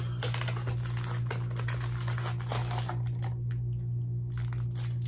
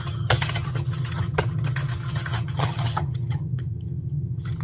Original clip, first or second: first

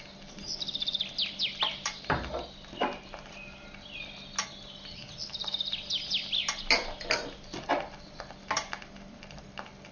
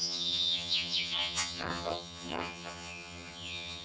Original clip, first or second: first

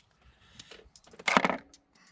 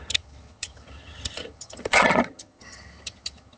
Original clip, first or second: first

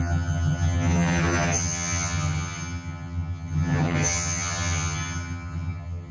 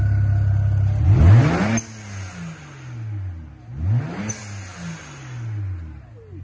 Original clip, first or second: second